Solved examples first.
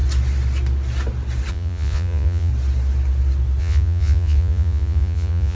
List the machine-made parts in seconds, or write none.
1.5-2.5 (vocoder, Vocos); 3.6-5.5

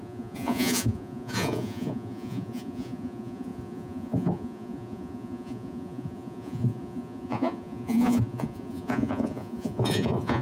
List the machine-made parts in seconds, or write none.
0.0-10.4 (vocoder, Vocos)

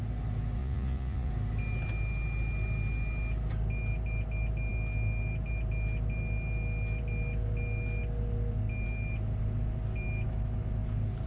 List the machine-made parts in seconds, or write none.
0.6-1.3 (vocoder, Vocos)

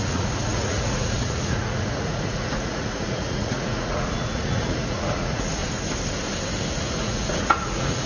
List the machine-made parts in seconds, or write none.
0.0-5.6 (vocoder, Vocos); 6.7-8.1